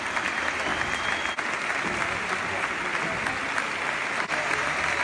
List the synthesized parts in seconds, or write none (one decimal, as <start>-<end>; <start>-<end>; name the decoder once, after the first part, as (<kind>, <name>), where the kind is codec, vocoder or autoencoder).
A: none